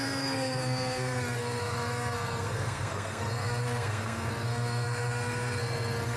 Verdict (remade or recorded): remade